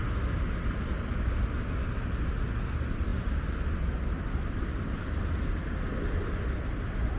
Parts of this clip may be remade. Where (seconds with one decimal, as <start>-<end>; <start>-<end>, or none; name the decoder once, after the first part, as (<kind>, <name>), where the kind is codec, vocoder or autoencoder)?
none